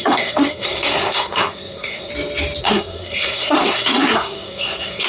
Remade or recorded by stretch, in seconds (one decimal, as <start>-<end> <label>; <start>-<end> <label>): 0.0-2.1 remade; 2.1-2.6 recorded; 2.6-5.1 remade